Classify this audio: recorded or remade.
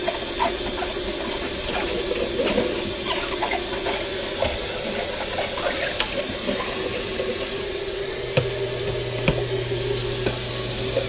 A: recorded